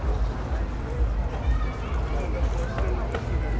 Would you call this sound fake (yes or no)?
no